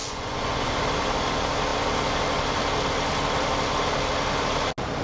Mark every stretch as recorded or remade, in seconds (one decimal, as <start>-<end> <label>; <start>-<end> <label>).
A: 0.0-0.7 remade; 0.7-5.0 recorded